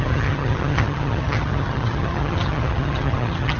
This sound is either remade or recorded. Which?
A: remade